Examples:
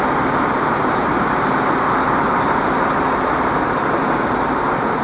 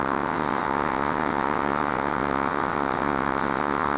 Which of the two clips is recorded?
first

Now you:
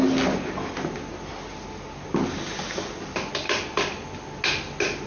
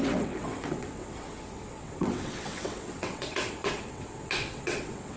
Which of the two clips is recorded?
first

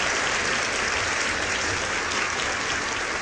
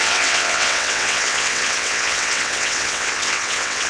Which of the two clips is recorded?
first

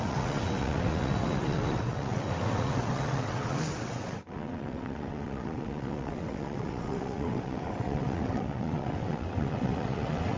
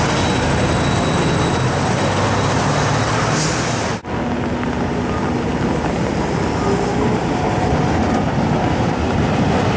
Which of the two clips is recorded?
second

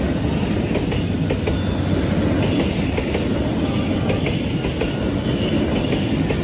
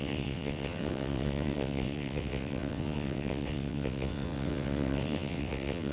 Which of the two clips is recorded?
first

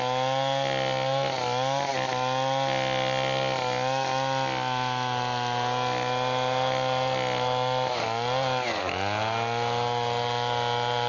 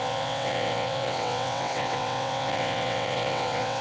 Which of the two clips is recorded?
first